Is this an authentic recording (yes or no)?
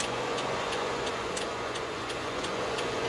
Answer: no